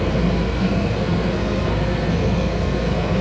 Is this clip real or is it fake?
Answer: fake